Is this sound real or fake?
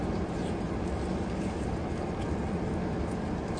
real